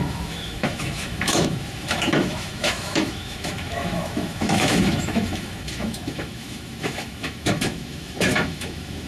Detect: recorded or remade remade